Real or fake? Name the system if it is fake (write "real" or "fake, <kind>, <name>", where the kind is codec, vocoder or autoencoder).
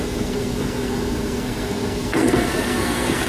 fake, codec, SNAC